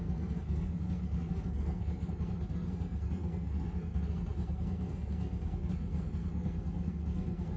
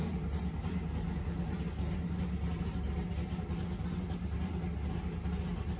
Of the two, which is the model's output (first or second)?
first